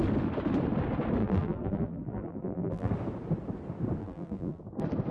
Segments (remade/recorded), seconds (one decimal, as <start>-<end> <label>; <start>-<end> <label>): 0.0-1.2 recorded; 1.2-2.9 remade; 2.9-4.0 recorded; 4.0-4.6 remade; 4.6-5.1 recorded

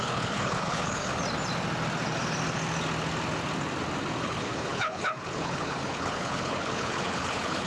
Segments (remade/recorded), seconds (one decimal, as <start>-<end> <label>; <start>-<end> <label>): 0.0-1.1 remade; 1.1-4.2 recorded; 4.2-7.7 remade

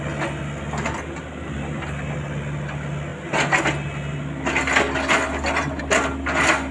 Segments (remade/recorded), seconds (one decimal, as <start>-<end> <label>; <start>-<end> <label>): 0.0-6.7 recorded

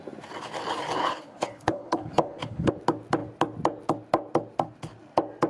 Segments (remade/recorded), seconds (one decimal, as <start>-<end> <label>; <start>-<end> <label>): 0.0-1.0 recorded; 1.0-2.7 remade; 2.7-5.5 recorded

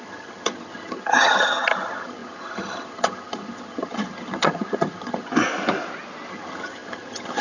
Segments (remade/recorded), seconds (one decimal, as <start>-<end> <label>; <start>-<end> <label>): 0.0-5.3 remade; 5.3-6.3 recorded; 6.3-7.4 remade

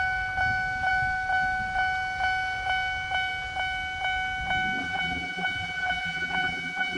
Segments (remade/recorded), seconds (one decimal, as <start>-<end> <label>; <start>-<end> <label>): 0.0-4.8 recorded; 4.8-7.0 remade

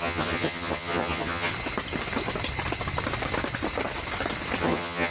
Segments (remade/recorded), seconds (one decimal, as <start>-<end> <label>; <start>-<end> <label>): 0.0-1.5 remade; 1.5-4.6 recorded; 4.6-5.1 remade